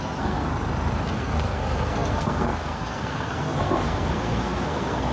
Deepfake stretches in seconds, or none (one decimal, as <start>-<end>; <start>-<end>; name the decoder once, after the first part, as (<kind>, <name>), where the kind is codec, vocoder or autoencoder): 0.0-0.5 (codec, SNAC); 1.1-5.1